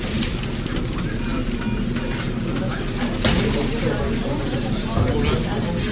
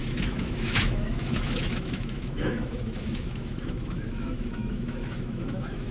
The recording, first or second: first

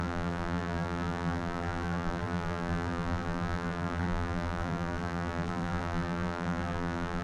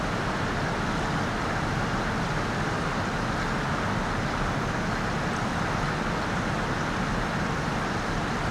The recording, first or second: second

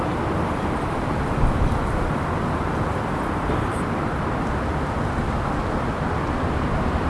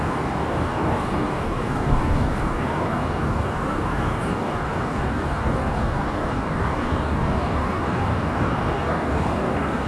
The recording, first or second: first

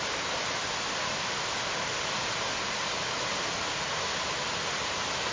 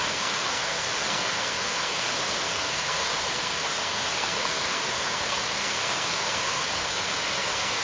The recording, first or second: first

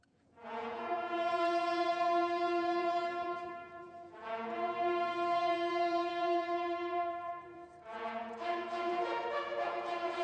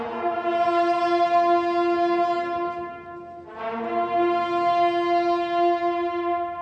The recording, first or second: second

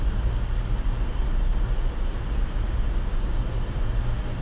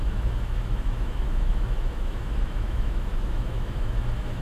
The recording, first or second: first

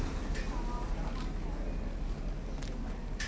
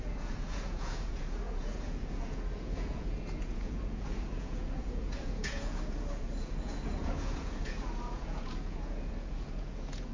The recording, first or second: first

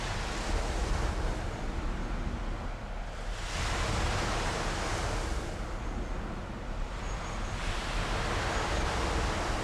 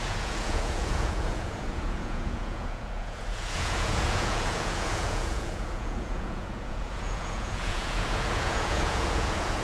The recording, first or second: first